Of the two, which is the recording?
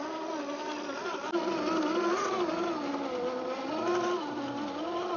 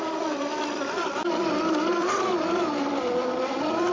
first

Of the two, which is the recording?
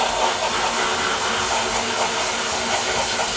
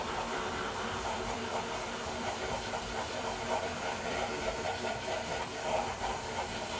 first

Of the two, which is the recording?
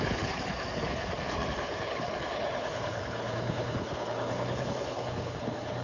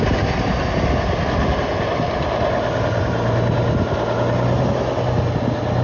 second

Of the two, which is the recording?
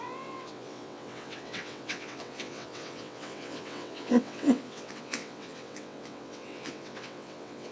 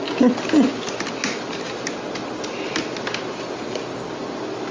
second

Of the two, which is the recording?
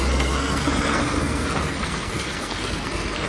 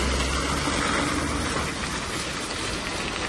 second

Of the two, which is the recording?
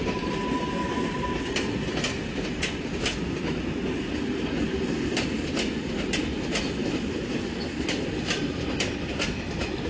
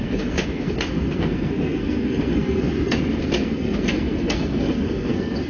first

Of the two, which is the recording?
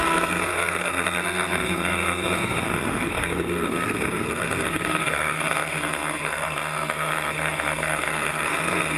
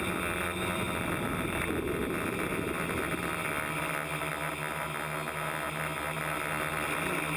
second